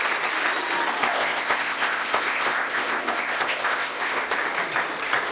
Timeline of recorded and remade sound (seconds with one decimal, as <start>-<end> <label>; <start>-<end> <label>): 0.0-1.0 recorded; 1.0-4.2 remade; 4.2-5.3 recorded